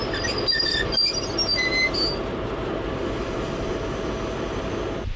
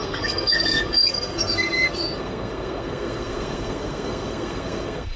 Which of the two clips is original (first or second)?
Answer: first